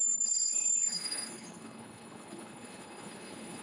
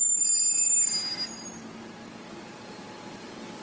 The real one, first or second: second